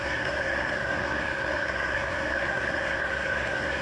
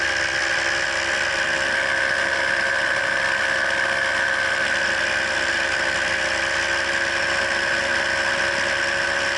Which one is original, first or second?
second